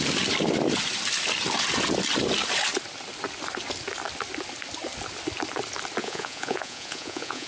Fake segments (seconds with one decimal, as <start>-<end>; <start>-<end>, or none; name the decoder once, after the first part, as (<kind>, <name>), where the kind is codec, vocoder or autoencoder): 6.0-7.5 (vocoder, Vocos)